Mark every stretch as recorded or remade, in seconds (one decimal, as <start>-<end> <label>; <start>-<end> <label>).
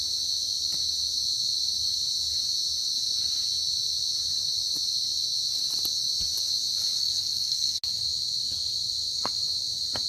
0.0-7.0 recorded; 7.0-7.8 remade; 7.8-10.1 recorded